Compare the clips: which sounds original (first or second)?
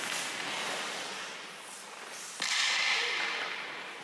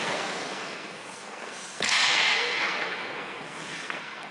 first